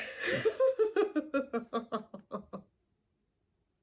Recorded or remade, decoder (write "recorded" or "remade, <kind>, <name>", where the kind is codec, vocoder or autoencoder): recorded